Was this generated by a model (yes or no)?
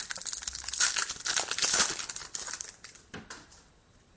no